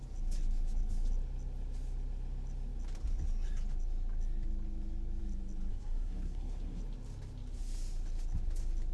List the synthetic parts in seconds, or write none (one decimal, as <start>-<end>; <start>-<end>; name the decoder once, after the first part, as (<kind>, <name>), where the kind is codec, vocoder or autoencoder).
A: 5.7-6.8 (codec, SNAC)